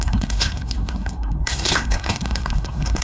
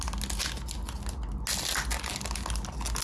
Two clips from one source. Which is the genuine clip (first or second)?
second